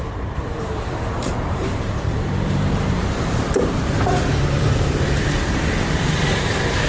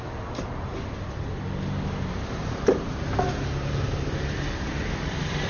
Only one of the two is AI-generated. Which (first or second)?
first